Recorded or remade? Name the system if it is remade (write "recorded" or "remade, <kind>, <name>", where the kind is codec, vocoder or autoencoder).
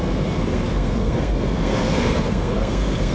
remade, codec, SNAC